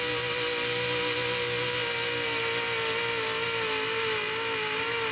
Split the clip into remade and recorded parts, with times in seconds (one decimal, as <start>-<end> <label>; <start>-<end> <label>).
0.0-5.1 recorded